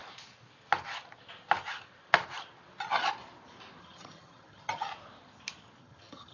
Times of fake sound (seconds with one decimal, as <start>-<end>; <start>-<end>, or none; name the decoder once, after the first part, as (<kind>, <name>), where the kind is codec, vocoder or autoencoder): 3.8-4.9 (vocoder, HiFi-GAN); 5.8-6.3